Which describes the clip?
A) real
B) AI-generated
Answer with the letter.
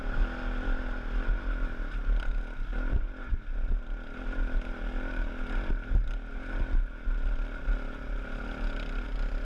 A